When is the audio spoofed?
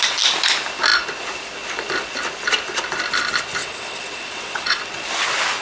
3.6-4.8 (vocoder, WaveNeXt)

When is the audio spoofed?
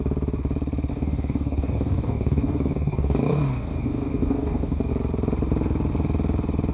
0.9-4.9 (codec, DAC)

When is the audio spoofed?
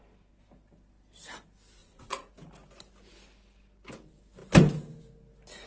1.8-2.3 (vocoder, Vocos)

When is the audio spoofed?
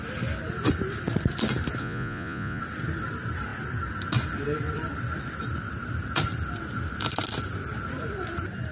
1.8-2.6 (vocoder, Vocos)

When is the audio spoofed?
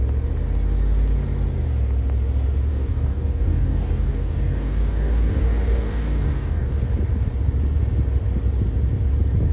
2.7-6.8 (codec, DAC)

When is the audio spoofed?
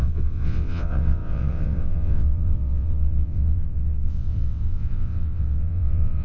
0.0-6.2 (vocoder, WaveNeXt)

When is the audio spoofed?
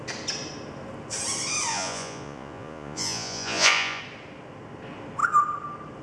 1.7-4.0 (vocoder, Vocos)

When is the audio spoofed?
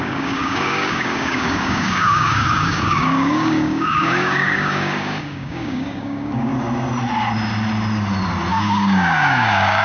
0.0-6.5 (codec, DAC); 8.5-9.8